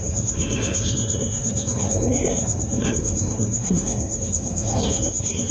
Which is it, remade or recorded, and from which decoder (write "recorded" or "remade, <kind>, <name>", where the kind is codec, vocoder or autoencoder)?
remade, codec, SNAC